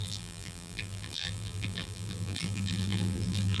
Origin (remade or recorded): remade